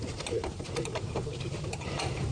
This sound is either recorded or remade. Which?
remade